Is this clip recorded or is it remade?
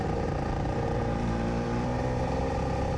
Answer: remade